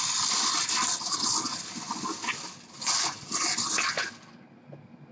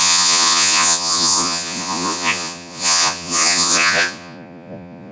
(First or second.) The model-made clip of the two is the second